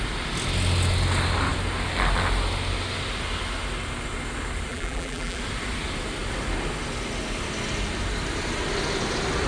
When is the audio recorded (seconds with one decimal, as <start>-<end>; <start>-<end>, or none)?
0.0-4.7; 5.4-9.5